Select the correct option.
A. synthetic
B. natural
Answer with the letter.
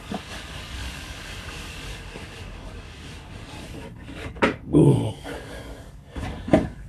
A